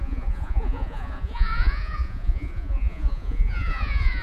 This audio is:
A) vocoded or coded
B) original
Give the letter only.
A